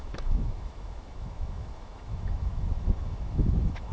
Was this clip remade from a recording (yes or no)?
yes